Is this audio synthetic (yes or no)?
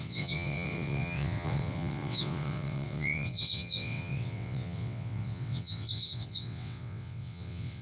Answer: yes